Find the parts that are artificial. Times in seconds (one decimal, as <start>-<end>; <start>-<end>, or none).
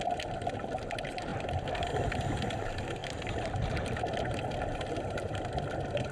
1.3-2.2; 3.0-4.6